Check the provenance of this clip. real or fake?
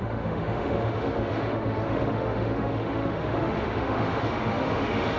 fake